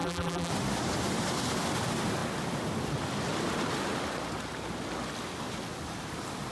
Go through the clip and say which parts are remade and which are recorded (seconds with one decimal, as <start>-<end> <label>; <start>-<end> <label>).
0.0-0.5 remade; 0.5-6.5 recorded